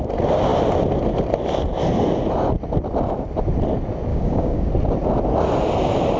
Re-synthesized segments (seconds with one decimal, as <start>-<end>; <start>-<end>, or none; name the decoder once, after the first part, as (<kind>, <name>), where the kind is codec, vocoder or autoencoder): 4.1-4.7 (codec, DAC)

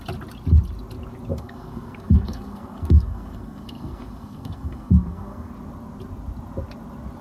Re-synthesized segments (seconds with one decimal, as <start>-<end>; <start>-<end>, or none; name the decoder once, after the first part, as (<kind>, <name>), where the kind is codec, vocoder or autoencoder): 1.3-5.5 (codec, SNAC)